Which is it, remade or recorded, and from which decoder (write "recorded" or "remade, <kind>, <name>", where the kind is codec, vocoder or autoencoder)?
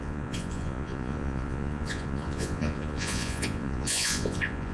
remade, vocoder, Vocos